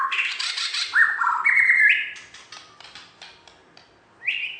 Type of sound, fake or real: real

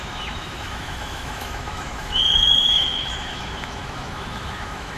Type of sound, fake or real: fake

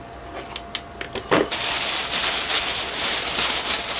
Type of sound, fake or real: real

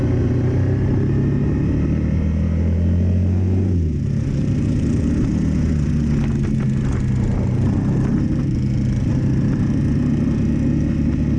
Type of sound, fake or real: real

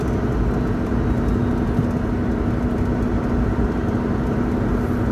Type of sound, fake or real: real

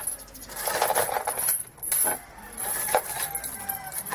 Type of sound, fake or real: real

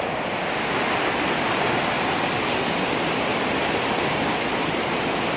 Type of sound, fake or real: real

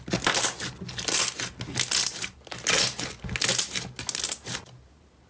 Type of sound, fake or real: real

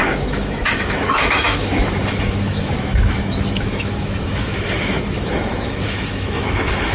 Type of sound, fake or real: fake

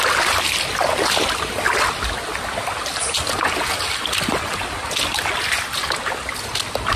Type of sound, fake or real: real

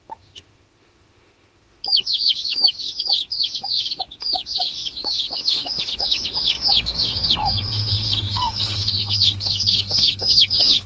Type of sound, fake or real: fake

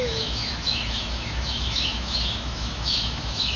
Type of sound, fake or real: fake